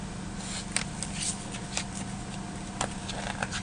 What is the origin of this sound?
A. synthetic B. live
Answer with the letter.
B